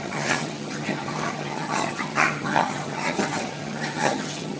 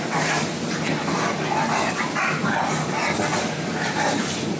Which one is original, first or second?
second